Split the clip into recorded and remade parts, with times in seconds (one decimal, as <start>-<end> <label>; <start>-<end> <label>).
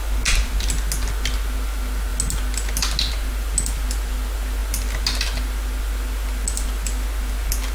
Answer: 0.0-7.7 recorded